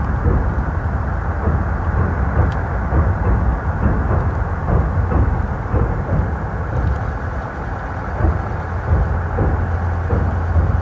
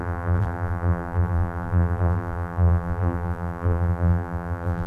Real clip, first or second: first